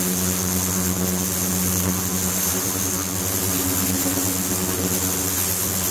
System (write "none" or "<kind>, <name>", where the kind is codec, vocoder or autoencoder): none